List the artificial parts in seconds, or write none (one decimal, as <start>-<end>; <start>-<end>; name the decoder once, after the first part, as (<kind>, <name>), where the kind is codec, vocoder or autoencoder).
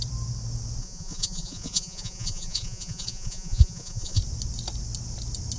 0.8-4.2 (vocoder, Vocos)